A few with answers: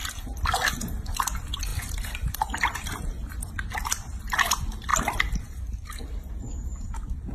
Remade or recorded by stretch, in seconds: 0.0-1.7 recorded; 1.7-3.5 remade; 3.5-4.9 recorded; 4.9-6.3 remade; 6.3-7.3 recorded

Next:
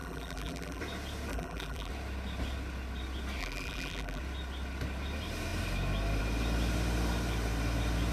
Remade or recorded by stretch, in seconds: 0.0-0.8 remade; 0.8-1.3 recorded; 1.3-1.9 remade; 1.9-3.4 recorded; 3.4-4.2 remade; 4.2-8.1 recorded

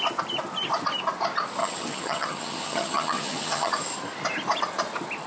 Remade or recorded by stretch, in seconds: 0.0-1.6 recorded; 1.6-3.7 remade; 3.7-5.3 recorded

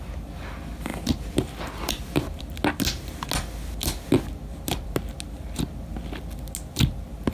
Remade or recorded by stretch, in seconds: 0.0-7.3 recorded

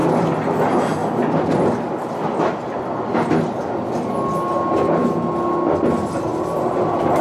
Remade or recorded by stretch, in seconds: 0.0-0.6 remade; 0.6-6.3 recorded; 6.3-7.2 remade

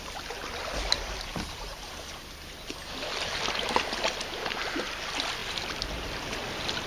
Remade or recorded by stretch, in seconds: 0.0-6.9 recorded

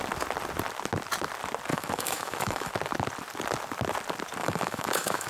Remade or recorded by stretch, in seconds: 0.0-1.7 recorded; 1.7-2.7 remade; 2.7-4.4 recorded; 4.4-5.3 remade